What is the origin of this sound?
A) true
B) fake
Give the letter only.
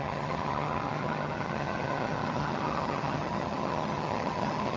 B